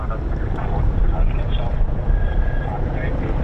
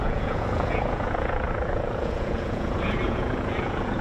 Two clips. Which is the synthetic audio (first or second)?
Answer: second